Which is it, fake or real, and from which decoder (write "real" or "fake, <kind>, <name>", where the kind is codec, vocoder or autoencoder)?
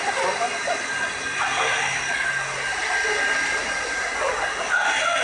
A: real